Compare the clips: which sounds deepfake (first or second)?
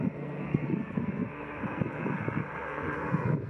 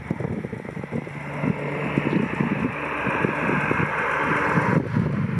first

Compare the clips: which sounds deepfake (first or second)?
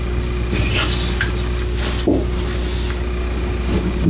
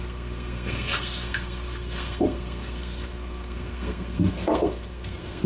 second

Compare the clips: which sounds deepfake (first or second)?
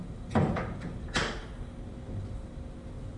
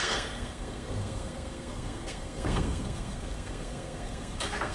second